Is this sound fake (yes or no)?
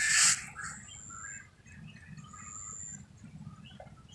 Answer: no